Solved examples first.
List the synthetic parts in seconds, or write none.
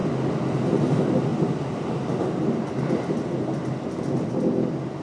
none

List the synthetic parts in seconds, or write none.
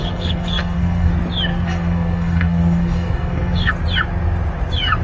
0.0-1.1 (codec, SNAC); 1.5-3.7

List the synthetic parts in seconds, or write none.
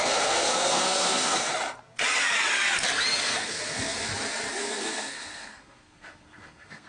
0.0-1.5 (codec, SNAC); 3.4-4.1; 4.6-6.9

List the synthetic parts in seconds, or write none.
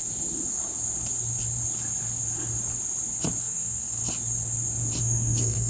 3.4-4.0 (codec, SNAC); 5.0-5.7